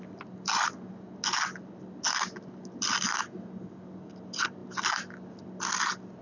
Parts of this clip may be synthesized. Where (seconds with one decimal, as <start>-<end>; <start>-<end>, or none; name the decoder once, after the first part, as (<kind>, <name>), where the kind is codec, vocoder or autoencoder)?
none